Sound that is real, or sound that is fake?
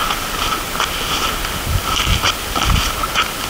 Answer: real